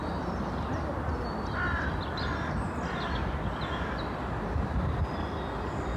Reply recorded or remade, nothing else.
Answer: recorded